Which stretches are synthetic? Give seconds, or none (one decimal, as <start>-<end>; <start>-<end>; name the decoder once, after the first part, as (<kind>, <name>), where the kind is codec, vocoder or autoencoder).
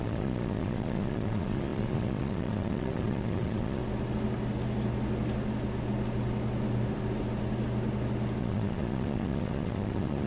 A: 0.0-3.8 (vocoder, Vocos); 8.4-10.3